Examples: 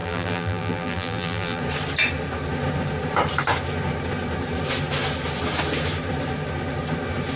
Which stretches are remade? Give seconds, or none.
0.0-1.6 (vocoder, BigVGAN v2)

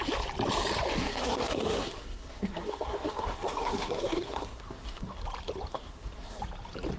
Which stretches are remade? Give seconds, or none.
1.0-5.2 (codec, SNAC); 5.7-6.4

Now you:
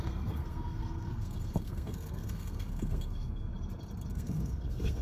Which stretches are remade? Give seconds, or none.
0.0-3.5 (codec, SNAC); 4.1-5.0

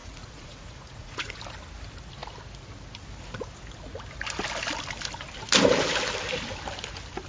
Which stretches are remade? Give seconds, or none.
0.0-1.3 (vocoder, Vocos)

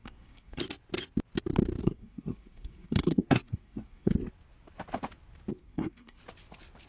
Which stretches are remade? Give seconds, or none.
0.0-0.6 (codec, SNAC); 1.8-4.1; 5.6-6.2